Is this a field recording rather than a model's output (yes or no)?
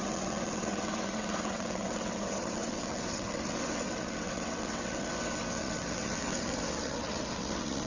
no